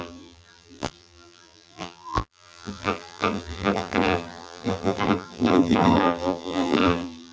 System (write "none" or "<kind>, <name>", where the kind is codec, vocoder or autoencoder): vocoder, BigVGAN v2